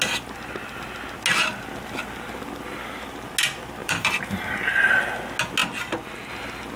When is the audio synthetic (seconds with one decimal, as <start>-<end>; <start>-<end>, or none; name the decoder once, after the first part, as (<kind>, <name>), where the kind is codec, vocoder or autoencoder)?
3.8-4.7 (vocoder, BigVGAN v2)